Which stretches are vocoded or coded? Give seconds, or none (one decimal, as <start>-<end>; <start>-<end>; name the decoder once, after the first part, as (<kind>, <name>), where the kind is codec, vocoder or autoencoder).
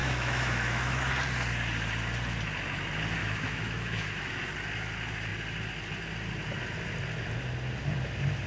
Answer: 0.0-1.1 (autoencoder, DAC-VAE); 3.2-4.4